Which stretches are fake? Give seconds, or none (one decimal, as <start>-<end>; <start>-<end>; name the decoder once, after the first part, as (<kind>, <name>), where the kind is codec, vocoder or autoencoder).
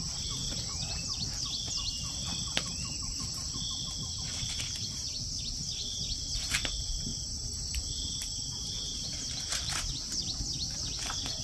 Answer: 7.1-9.8 (vocoder, BigVGAN v2)